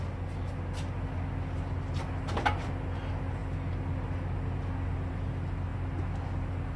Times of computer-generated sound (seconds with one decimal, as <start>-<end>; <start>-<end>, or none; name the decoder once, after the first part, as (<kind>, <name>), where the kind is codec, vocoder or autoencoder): none